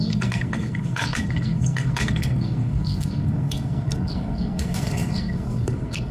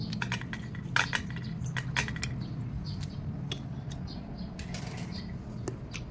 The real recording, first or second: second